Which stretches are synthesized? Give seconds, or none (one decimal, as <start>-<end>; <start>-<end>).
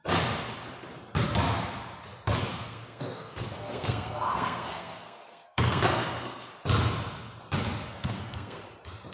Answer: 2.5-6.5; 7.9-8.6